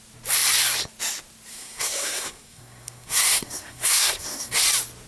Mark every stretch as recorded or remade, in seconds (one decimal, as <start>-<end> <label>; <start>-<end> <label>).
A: 0.0-1.5 recorded; 1.5-4.6 remade; 4.6-5.1 recorded